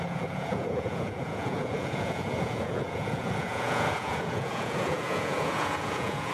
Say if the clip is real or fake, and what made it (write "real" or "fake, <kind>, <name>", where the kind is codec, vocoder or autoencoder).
fake, vocoder, Vocos